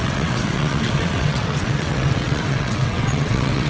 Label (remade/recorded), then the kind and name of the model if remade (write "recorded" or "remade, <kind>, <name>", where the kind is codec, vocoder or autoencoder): remade, vocoder, WaveNeXt